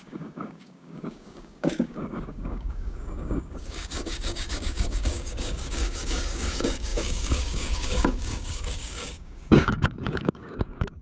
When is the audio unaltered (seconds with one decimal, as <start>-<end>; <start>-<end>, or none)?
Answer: none